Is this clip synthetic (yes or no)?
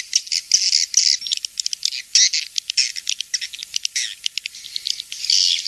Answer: no